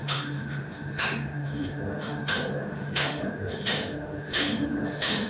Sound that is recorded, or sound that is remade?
remade